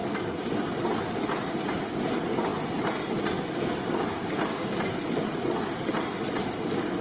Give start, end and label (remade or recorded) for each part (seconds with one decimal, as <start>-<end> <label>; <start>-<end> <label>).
0.0-7.0 recorded